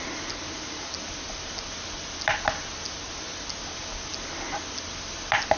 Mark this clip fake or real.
real